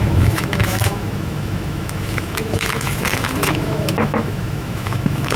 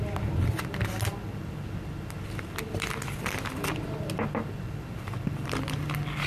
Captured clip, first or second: second